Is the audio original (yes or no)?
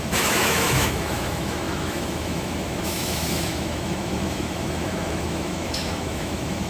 no